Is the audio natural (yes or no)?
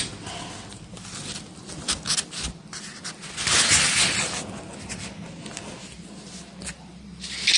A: yes